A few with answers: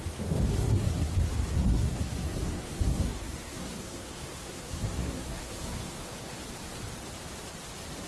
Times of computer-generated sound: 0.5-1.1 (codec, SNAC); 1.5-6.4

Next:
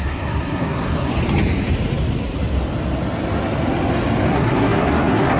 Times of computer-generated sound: 0.0-1.1 (codec, SNAC); 4.3-5.4